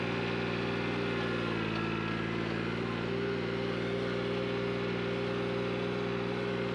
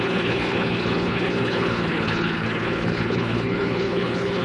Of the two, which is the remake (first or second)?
second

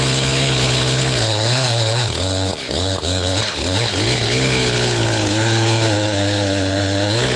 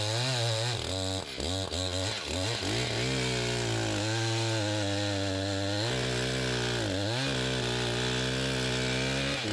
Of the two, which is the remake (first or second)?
first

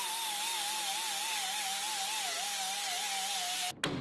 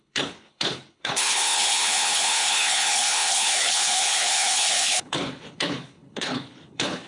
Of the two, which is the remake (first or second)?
second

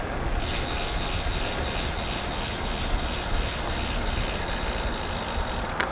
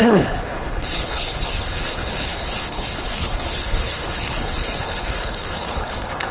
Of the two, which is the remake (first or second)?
second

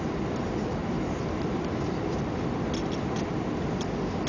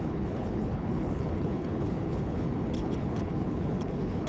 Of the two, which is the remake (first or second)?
second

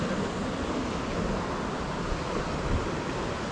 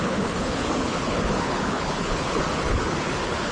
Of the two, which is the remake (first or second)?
second